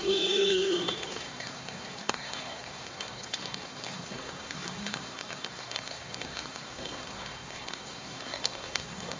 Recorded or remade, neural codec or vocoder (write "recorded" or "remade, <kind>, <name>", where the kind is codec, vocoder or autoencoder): remade, codec, SNAC